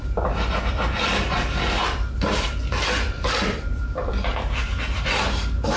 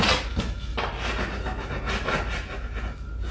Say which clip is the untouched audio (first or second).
second